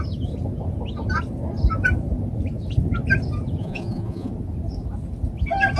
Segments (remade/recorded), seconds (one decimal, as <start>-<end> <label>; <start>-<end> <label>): 0.0-3.6 recorded; 3.6-4.3 remade; 4.3-5.8 recorded